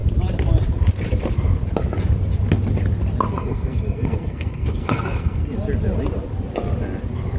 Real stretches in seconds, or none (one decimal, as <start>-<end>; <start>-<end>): 0.0-3.3; 5.5-7.4